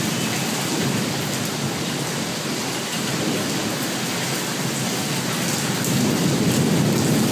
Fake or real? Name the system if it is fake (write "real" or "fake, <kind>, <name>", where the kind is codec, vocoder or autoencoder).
real